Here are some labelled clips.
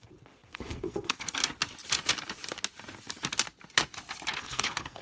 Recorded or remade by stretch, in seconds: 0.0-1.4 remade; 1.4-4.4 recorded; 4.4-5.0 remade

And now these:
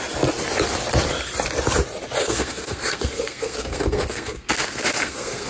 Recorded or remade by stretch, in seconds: 0.0-2.2 recorded; 2.2-5.5 remade

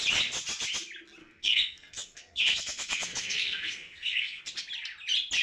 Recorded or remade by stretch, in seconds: 0.0-1.2 recorded; 1.2-4.4 remade; 4.4-5.4 recorded

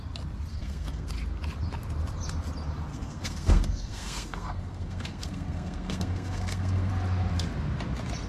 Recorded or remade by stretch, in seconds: 0.0-0.5 recorded; 0.5-1.1 remade; 1.1-2.9 recorded; 2.9-6.9 remade; 6.9-8.3 recorded

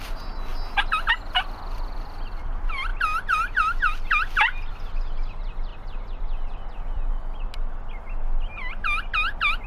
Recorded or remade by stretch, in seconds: 0.0-9.7 recorded